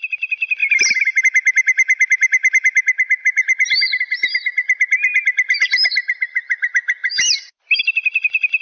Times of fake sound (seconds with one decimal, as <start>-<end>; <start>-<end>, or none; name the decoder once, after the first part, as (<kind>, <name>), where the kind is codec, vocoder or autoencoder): 3.2-4.0 (vocoder, BigVGAN v2)